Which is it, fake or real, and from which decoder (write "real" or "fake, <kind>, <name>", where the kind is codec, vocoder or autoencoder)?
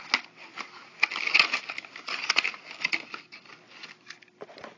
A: real